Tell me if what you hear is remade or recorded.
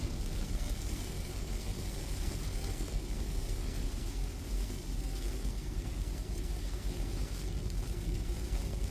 remade